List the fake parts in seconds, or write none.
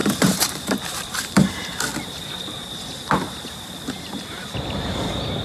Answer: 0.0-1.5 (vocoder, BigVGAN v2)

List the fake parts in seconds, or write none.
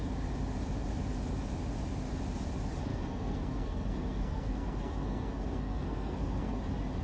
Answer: 2.9-6.6 (codec, SNAC)